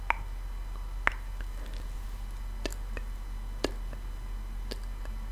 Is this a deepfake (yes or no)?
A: no